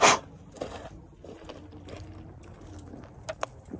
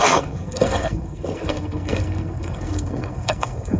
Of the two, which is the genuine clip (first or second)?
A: first